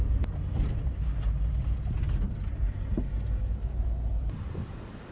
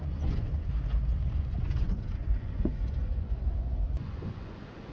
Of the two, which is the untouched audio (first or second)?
first